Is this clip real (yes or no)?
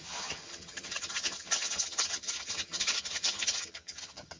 no